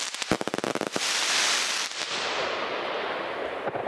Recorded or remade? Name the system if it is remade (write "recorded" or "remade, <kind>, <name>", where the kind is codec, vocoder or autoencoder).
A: recorded